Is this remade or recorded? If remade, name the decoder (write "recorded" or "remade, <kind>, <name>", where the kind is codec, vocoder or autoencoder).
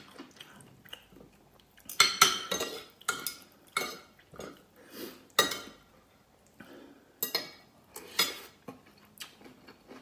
recorded